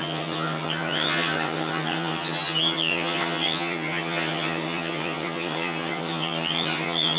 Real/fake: fake